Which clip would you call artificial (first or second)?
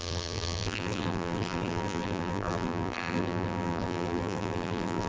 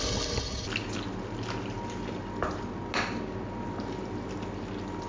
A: first